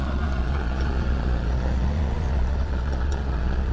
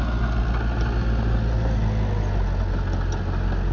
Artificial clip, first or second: first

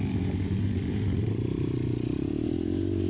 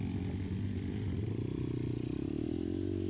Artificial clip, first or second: first